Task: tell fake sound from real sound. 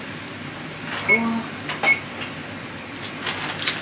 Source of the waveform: real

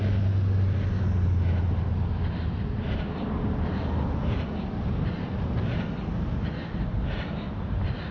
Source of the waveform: real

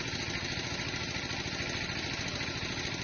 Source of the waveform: real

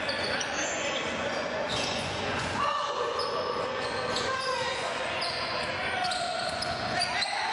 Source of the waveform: fake